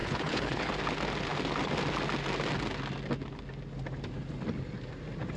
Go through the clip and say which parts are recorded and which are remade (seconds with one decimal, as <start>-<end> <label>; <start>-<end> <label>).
0.0-0.7 remade; 0.7-5.4 recorded